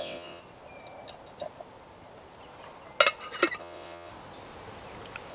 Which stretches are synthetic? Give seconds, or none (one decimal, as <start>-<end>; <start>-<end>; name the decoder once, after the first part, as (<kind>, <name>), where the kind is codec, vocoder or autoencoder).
0.0-0.4 (vocoder, WaveNeXt); 3.6-4.1